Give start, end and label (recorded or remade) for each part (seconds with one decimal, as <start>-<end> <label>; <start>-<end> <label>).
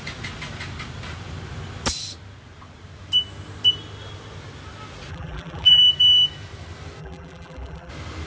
0.0-5.1 recorded; 5.1-5.8 remade; 5.8-7.0 recorded; 7.0-7.9 remade; 7.9-8.3 recorded